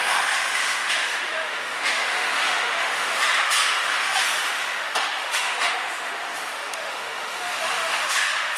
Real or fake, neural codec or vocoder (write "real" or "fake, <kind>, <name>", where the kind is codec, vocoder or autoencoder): fake, autoencoder, DAC-VAE